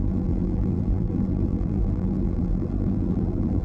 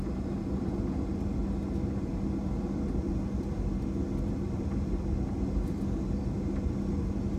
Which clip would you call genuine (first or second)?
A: second